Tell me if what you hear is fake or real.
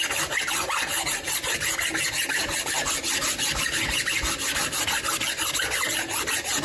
real